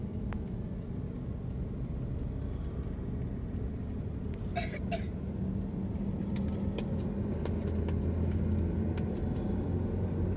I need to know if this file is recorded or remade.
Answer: recorded